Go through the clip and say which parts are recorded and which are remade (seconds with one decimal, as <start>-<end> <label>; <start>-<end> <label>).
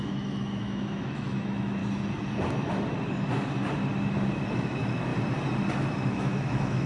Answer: 0.0-1.8 remade; 1.8-4.5 recorded; 4.5-5.1 remade; 5.1-5.7 recorded; 5.7-6.9 remade